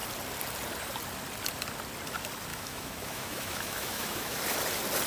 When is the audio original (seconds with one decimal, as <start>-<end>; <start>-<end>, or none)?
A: 0.0-2.5; 4.4-5.1